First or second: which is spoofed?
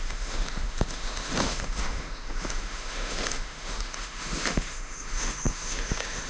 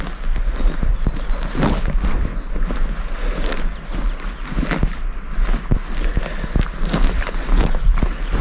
first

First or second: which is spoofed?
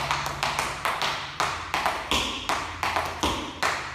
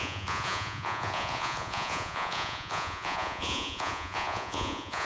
second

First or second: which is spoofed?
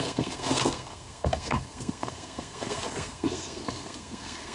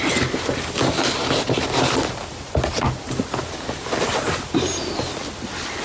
first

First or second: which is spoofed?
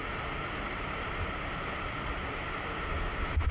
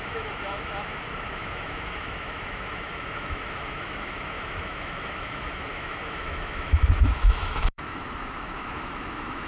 second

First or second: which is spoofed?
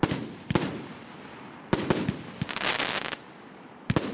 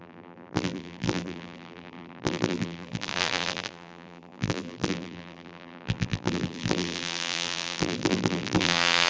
second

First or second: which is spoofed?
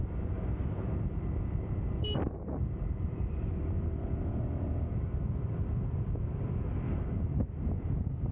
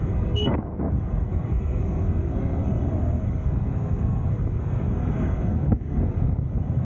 second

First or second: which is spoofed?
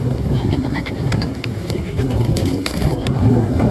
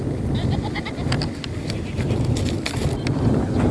first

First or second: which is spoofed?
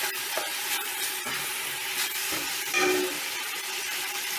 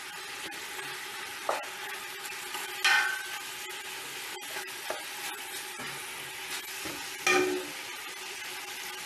first